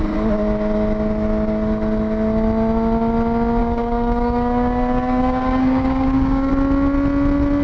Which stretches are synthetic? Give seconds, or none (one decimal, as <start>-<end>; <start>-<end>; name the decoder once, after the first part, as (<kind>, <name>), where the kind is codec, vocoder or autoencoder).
3.6-6.5 (codec, DAC)